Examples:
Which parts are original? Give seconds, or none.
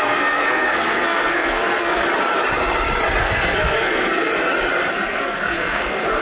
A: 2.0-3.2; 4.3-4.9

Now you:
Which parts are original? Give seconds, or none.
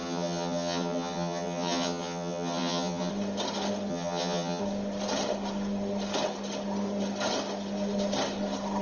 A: 3.1-3.9; 4.6-8.8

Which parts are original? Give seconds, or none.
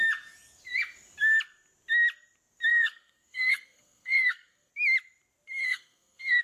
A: 0.0-2.7; 4.7-5.6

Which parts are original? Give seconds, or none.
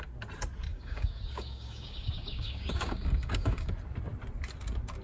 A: 0.0-0.7; 3.7-5.0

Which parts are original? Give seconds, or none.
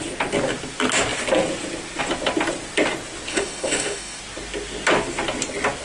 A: 0.0-3.3; 4.2-5.8